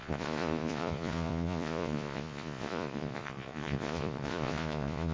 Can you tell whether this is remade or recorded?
remade